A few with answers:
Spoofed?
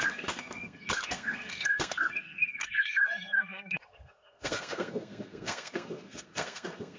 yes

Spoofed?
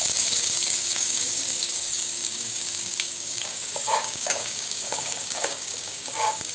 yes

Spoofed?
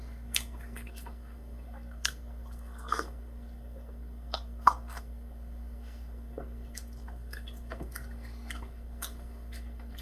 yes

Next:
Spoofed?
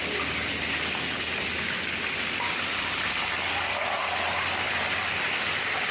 no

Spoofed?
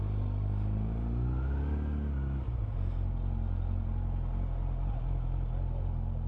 no